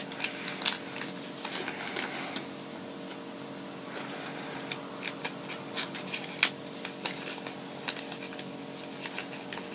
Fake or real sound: real